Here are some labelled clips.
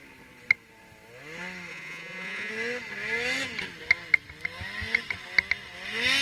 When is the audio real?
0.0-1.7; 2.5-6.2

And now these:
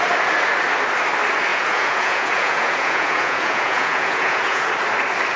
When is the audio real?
0.0-1.5; 4.7-5.4